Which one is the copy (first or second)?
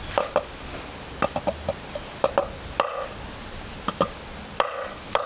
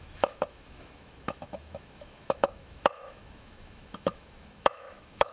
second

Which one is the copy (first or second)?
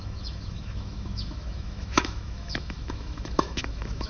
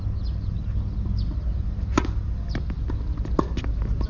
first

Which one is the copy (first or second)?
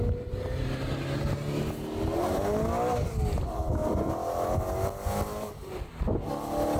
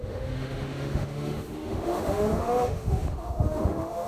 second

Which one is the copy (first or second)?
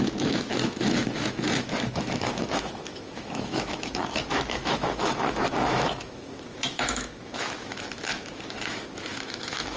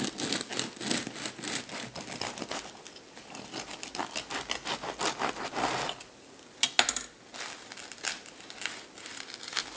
first